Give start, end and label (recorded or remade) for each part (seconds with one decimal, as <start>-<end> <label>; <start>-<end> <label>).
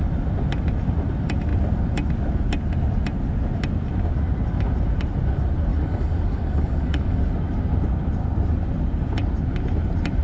0.0-5.7 recorded; 5.7-7.2 remade; 7.2-10.2 recorded